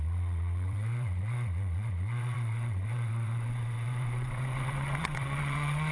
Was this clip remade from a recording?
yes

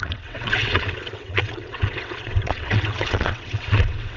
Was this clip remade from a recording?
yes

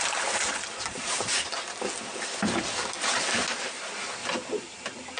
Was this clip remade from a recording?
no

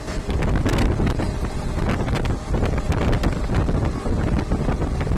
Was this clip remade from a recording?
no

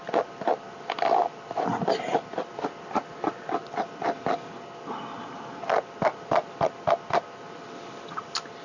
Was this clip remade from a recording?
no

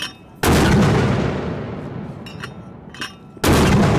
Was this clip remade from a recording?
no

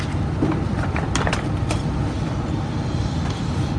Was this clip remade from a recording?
no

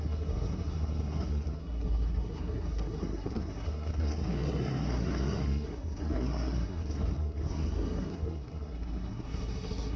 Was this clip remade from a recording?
yes